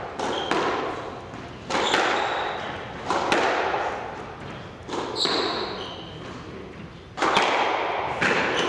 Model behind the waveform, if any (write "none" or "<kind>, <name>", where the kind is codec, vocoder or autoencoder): none